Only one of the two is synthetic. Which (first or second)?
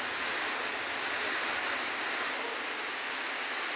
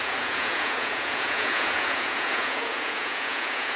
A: second